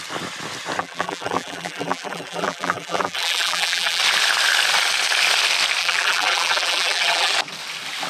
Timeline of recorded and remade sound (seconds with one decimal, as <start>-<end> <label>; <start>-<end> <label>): 0.0-0.8 recorded; 0.8-4.0 remade; 4.0-5.8 recorded; 5.8-7.3 remade; 7.3-8.1 recorded

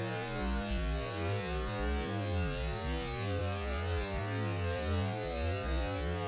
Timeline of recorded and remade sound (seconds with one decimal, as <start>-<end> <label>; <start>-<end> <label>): 0.0-6.3 recorded

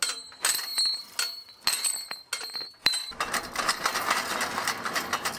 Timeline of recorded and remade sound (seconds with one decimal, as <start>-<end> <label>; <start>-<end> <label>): 0.0-5.4 recorded